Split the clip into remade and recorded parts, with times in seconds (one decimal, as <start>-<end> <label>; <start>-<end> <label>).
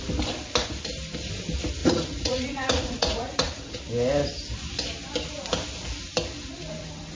0.0-1.8 recorded; 1.8-3.8 remade; 3.8-7.2 recorded